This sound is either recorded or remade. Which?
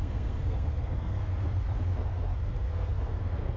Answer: remade